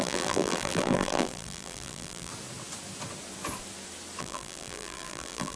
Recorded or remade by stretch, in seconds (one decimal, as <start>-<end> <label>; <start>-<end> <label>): 0.0-2.3 remade; 2.3-4.2 recorded; 4.2-5.6 remade